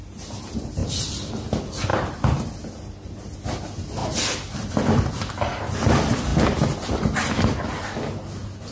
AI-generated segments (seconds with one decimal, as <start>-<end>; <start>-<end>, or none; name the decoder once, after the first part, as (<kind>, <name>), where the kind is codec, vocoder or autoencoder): 0.8-1.3 (vocoder, BigVGAN v2); 1.9-2.5